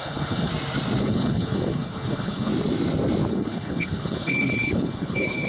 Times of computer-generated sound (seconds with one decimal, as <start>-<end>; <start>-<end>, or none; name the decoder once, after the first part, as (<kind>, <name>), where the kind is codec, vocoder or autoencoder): 0.0-0.5 (codec, HILCodec); 1.0-2.5; 3.3-5.5